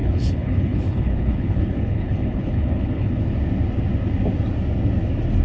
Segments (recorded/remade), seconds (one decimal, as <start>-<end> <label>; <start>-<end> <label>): 0.0-3.2 remade; 3.2-5.4 recorded